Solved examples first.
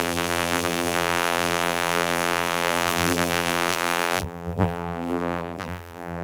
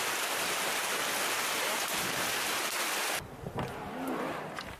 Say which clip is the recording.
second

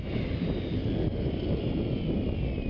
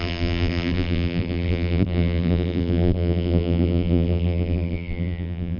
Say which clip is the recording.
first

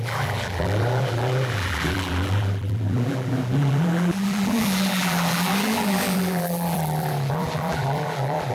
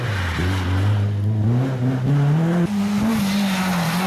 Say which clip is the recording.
second